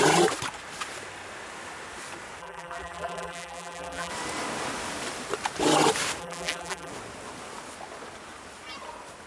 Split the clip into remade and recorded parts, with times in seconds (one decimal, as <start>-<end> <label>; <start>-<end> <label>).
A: 0.0-2.4 recorded; 2.4-4.1 remade; 4.1-6.2 recorded; 6.2-6.9 remade; 6.9-9.3 recorded